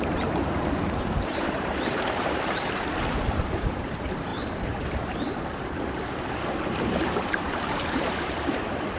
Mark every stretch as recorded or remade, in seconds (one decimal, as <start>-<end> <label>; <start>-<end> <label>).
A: 0.0-9.0 remade